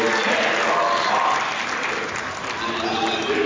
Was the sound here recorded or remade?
recorded